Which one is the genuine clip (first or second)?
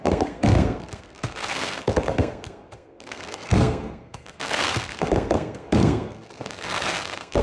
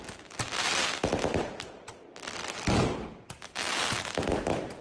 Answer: second